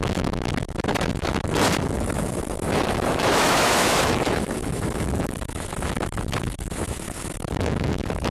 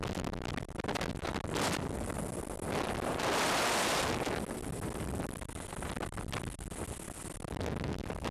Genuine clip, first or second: second